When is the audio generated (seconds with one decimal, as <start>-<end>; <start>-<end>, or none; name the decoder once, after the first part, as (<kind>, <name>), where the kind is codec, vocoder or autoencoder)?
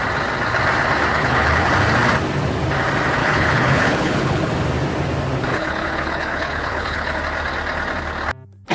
1.1-1.7 (codec, HILCodec); 3.2-4.5; 5.5-7.2